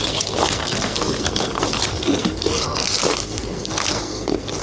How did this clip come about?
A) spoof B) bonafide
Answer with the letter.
A